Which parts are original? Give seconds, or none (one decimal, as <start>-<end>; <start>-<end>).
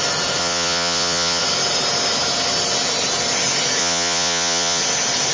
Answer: 0.0-0.4; 1.4-3.8; 4.8-5.3